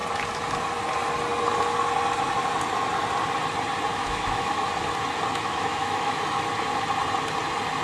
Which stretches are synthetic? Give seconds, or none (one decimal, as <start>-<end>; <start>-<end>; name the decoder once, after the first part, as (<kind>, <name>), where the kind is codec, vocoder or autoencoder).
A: 3.9-4.7 (autoencoder, DAC-VAE); 5.3-6.4